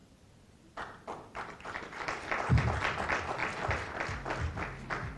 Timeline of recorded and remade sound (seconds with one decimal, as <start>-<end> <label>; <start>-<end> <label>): 0.0-2.3 remade; 2.3-5.2 recorded